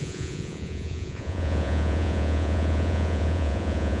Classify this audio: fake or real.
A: fake